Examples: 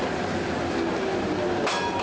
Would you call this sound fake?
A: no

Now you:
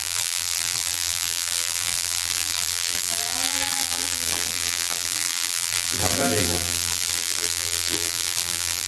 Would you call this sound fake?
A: yes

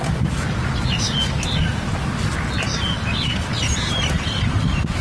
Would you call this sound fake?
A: no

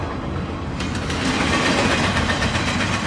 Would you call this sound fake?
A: no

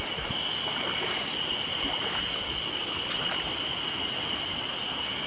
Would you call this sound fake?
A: no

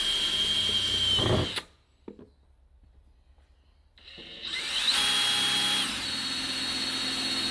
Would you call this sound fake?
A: no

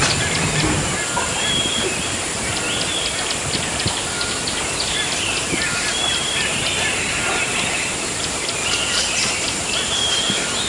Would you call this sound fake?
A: yes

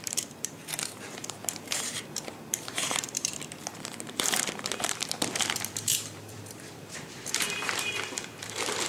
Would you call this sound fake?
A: yes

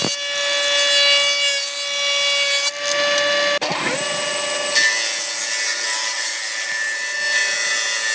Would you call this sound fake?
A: no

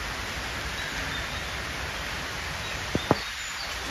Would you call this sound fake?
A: no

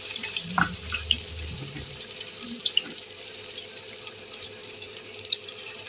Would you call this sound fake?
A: yes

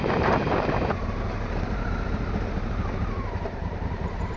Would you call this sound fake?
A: yes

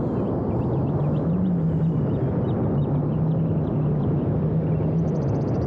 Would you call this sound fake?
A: no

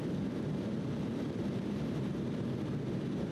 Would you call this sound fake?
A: yes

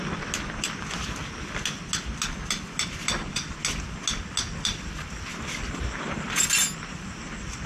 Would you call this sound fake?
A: no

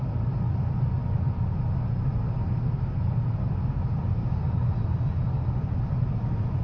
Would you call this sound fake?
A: no